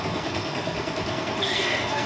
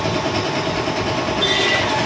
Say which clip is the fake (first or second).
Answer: first